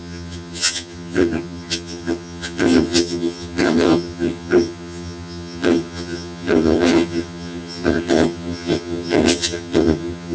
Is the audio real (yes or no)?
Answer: no